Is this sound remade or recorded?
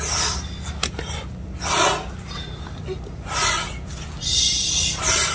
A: recorded